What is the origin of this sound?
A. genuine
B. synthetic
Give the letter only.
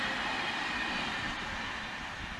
A